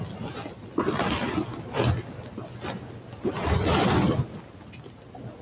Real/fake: real